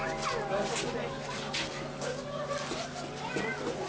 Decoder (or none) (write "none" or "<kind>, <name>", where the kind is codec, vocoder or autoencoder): none